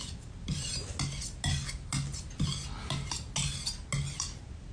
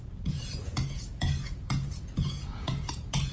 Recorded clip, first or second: first